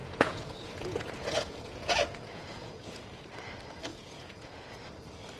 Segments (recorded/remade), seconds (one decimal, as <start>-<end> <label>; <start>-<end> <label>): 0.0-3.0 remade; 3.0-3.9 recorded; 3.9-4.7 remade; 4.7-5.4 recorded